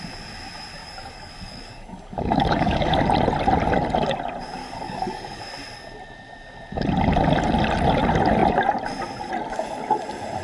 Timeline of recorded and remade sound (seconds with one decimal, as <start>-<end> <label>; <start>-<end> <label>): 0.0-0.8 recorded; 0.8-3.0 remade; 3.0-4.6 recorded; 4.6-5.4 remade; 5.4-10.4 recorded